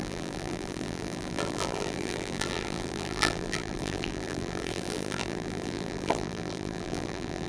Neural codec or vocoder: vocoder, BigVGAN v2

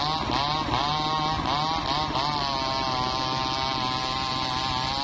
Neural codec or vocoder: none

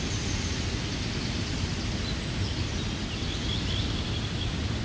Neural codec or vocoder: vocoder, BigVGAN v2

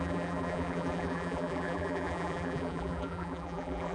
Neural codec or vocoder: vocoder, BigVGAN v2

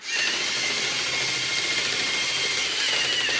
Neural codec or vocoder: none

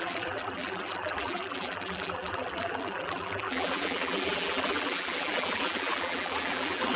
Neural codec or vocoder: vocoder, BigVGAN v2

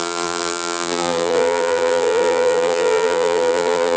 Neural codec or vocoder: vocoder, BigVGAN v2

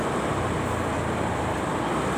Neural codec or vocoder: vocoder, BigVGAN v2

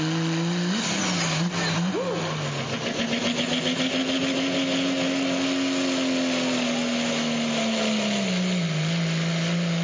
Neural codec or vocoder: none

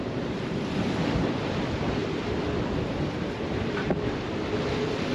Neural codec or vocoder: vocoder, BigVGAN v2